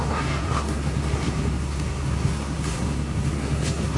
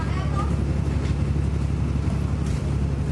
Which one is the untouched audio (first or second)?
second